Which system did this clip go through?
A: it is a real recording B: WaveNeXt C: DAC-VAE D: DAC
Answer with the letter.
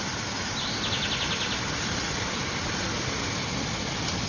A